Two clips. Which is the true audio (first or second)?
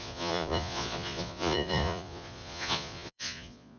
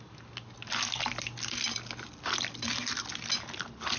second